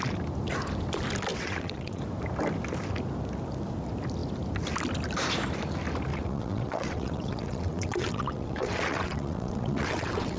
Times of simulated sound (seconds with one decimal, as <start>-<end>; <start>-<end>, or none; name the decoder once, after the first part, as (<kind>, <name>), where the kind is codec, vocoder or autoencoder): 1.3-2.0 (vocoder, WaveNeXt); 6.1-10.4